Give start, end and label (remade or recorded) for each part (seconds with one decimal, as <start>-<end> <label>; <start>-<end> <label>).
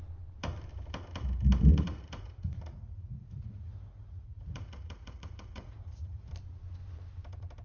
0.0-1.7 recorded; 1.7-6.3 remade; 6.3-7.6 recorded